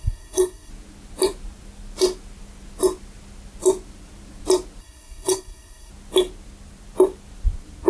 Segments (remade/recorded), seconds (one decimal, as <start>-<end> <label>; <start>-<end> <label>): 0.0-0.7 remade; 0.7-4.8 recorded; 4.8-5.9 remade; 5.9-7.9 recorded